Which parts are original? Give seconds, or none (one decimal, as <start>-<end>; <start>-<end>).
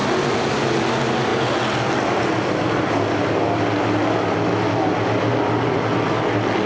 0.0-6.7